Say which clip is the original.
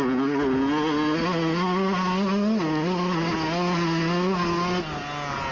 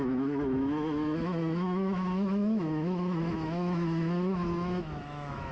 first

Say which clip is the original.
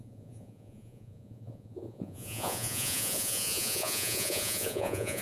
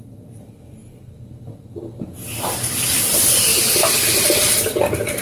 second